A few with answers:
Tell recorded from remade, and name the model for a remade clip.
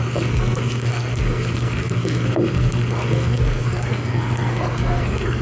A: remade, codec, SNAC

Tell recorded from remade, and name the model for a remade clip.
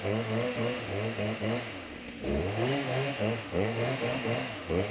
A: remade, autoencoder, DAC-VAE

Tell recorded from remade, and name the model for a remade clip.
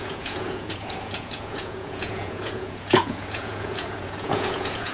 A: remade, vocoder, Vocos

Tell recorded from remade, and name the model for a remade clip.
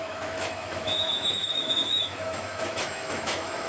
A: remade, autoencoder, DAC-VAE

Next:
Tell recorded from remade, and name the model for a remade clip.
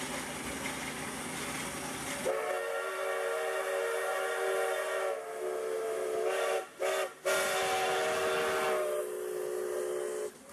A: recorded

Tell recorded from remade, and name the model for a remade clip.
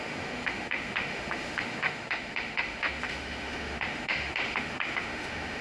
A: remade, autoencoder, DAC-VAE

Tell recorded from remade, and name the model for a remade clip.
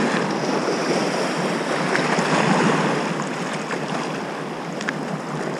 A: recorded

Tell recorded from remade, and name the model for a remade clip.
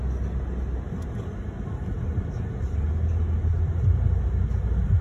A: recorded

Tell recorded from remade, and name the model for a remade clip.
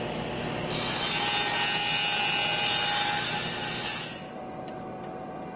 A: recorded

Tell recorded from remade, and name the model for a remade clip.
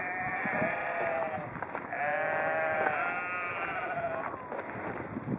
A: recorded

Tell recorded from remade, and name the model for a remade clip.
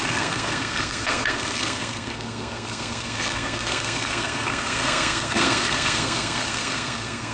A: remade, codec, SNAC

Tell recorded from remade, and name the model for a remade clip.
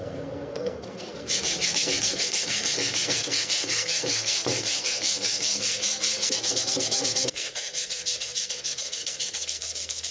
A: remade, codec, SNAC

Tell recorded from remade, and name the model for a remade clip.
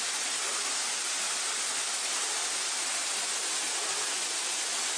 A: recorded